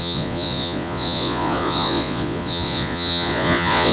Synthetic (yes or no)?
yes